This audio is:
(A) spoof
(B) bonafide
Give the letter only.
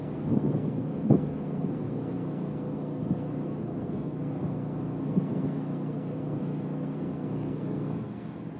A